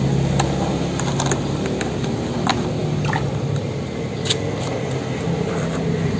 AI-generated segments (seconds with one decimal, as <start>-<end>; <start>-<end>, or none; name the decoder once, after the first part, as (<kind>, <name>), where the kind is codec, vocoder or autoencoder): none